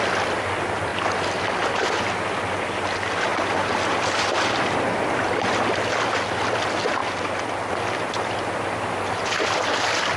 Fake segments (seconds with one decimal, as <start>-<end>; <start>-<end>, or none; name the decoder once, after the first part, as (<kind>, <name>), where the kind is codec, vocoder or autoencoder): none